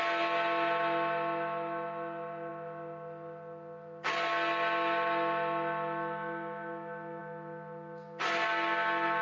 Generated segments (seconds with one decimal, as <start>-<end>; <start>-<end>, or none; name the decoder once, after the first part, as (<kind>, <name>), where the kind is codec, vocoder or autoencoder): none